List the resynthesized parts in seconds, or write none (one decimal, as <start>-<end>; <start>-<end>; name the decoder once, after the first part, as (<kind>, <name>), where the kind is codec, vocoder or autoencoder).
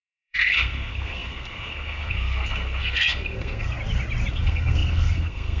0.0-3.8 (codec, SNAC); 4.3-5.6